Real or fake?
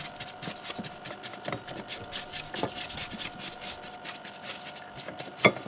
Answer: real